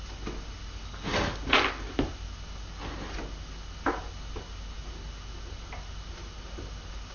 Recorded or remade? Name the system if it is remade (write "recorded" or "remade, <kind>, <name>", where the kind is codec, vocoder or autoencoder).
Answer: recorded